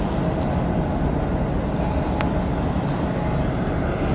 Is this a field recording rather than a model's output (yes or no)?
yes